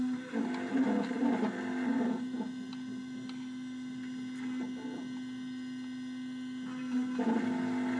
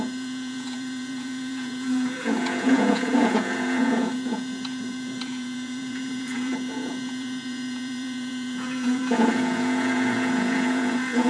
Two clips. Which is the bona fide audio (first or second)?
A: first